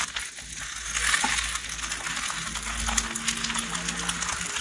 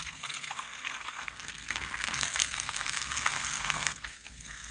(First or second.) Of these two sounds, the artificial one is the second